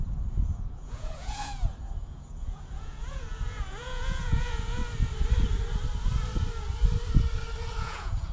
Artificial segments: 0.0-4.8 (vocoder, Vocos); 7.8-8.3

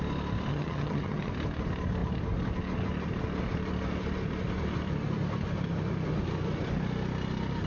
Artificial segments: 0.5-1.3 (vocoder, HiFi-GAN)